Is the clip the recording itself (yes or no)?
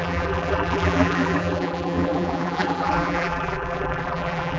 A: no